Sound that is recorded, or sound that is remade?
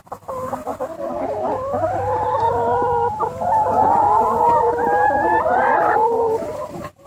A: recorded